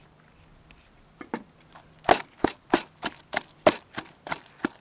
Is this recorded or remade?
recorded